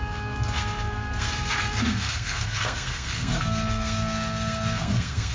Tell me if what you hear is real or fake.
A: fake